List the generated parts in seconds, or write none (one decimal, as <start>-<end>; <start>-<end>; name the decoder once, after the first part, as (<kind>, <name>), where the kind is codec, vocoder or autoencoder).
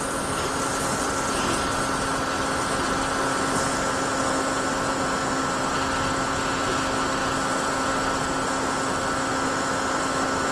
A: none